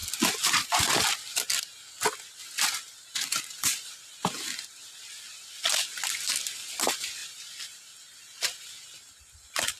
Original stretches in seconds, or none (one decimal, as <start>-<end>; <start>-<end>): 0.0-2.9; 4.6-7.2